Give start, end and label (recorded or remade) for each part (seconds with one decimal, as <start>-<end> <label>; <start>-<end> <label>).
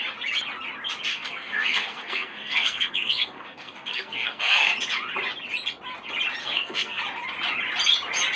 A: 0.0-1.1 recorded; 1.1-4.7 remade; 4.7-6.4 recorded; 6.4-7.0 remade; 7.0-8.4 recorded